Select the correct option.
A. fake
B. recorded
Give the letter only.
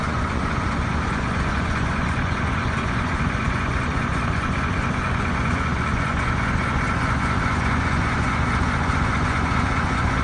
A